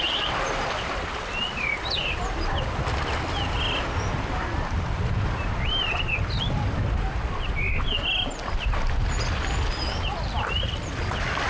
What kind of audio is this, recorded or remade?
recorded